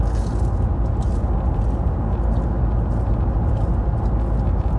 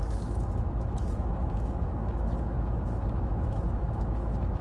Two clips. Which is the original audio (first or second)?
first